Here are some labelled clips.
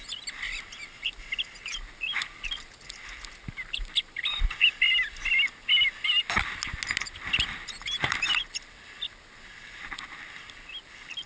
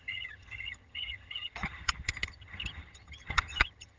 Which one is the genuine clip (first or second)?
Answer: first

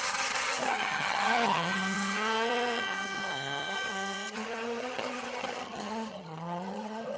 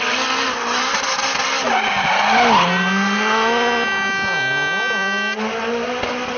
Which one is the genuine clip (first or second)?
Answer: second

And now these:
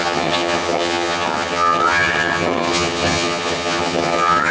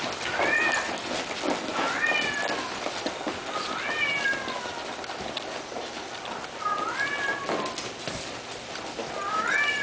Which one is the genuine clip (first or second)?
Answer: second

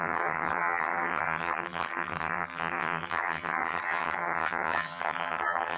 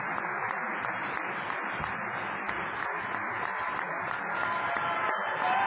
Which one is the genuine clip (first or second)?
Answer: second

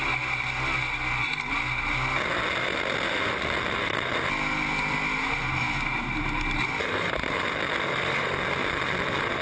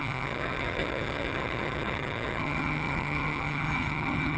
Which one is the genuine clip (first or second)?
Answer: first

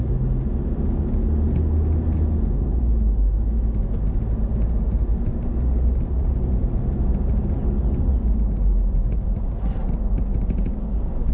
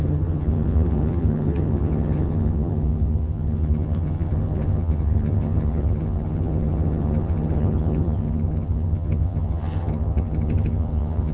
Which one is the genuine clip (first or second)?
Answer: first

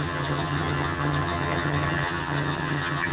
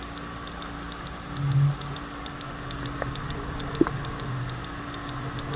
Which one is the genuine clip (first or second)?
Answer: second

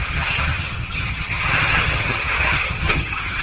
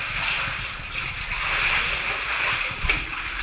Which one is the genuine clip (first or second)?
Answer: second